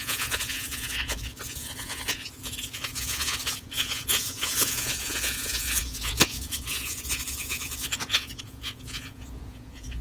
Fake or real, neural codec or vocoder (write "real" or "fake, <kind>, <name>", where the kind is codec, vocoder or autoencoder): fake, vocoder, Vocos